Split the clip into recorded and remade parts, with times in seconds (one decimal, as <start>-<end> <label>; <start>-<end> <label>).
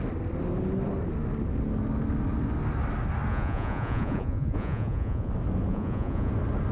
0.0-3.3 recorded; 3.3-5.3 remade; 5.3-5.7 recorded; 5.7-6.3 remade; 6.3-6.7 recorded